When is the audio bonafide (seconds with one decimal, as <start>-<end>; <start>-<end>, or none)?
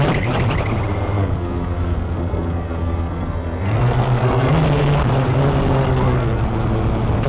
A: 0.0-1.2; 4.6-5.8; 6.5-7.3